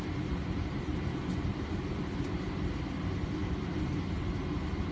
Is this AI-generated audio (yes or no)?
no